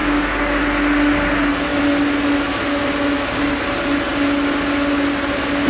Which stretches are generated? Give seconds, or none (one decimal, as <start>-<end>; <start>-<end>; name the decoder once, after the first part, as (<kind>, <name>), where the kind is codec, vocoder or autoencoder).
0.0-0.6 (codec, DAC)